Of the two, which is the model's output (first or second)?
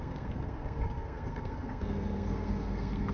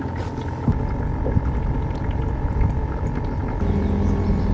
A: first